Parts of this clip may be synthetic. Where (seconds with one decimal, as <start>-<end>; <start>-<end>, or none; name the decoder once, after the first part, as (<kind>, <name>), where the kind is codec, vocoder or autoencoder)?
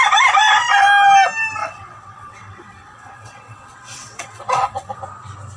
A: 1.6-5.0 (vocoder, WaveNeXt)